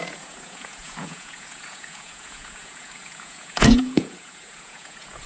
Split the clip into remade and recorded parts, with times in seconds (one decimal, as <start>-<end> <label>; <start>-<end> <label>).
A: 0.0-5.3 remade